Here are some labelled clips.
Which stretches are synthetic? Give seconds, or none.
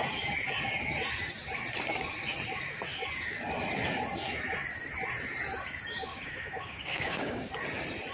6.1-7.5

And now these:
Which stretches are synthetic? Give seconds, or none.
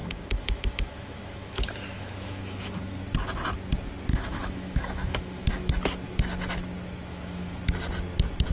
0.0-3.0; 4.1-5.7; 7.1-7.6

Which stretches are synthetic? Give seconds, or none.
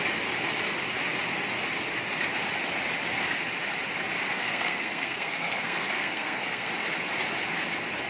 4.4-6.7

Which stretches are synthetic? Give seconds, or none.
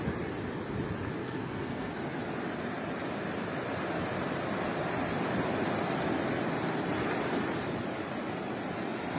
1.2-1.9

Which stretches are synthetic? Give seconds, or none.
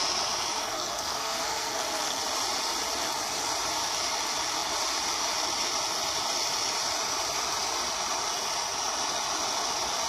0.7-2.2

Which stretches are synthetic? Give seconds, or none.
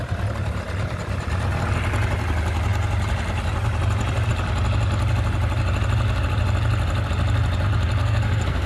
8.0-8.7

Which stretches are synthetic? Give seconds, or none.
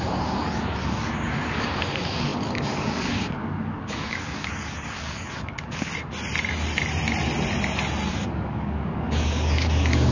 0.0-5.9; 8.1-10.1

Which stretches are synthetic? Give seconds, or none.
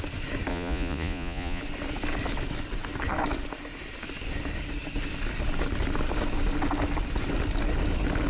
0.5-1.6